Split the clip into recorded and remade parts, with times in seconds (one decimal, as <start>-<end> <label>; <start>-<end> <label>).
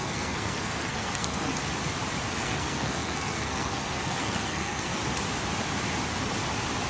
0.0-1.5 remade; 1.5-2.3 recorded; 2.3-5.0 remade; 5.0-6.9 recorded